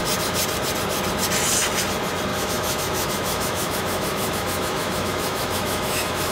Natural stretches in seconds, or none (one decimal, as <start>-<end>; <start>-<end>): 0.0-2.3